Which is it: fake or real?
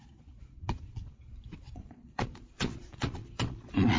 fake